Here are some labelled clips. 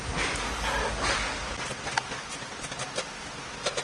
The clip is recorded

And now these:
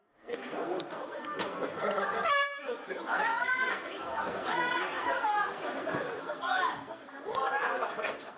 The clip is remade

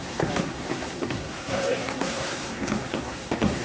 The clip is remade